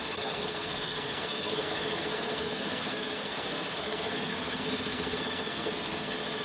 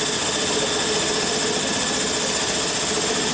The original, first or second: second